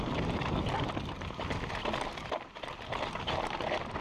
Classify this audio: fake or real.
real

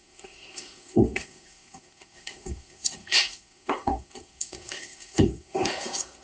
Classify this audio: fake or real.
fake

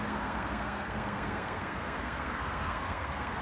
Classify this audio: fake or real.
fake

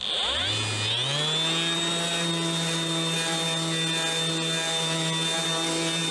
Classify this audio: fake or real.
real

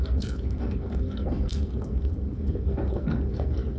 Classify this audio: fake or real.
fake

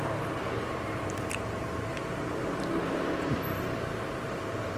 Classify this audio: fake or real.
real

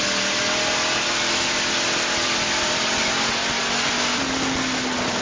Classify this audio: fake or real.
real